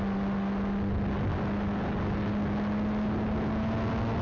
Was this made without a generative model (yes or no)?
yes